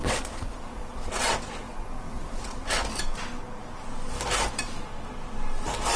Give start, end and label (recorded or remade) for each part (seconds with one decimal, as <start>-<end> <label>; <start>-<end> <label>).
0.0-2.8 remade; 2.8-6.0 recorded